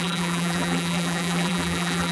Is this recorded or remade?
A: remade